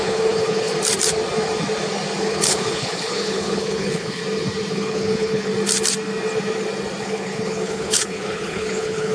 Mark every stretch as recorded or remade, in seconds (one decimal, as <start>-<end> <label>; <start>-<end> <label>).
0.0-0.7 remade; 0.7-2.2 recorded; 2.2-4.2 remade; 4.2-4.7 recorded; 4.7-5.5 remade; 5.5-7.0 recorded; 7.0-9.1 remade